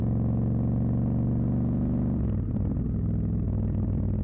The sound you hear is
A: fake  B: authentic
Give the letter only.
B